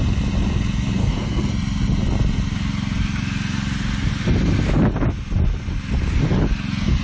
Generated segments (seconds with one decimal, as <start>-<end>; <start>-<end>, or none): 1.0-1.5